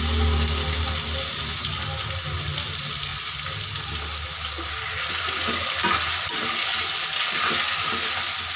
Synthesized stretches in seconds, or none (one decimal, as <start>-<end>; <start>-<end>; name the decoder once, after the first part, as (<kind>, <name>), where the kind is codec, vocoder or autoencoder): none